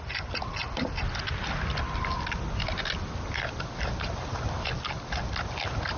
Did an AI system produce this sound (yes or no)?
no